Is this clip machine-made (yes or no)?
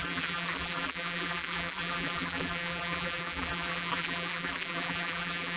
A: yes